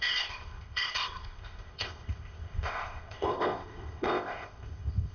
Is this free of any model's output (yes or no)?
no